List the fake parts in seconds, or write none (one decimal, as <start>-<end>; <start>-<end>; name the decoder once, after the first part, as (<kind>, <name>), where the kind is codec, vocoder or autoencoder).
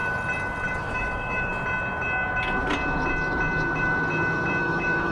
0.8-1.5 (autoencoder, DAC-VAE); 4.6-5.1